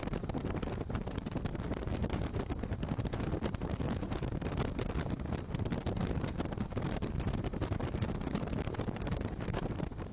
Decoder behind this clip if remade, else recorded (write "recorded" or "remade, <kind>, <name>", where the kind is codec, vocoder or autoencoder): remade, vocoder, BigVGAN v2